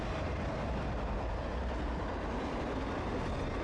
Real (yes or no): yes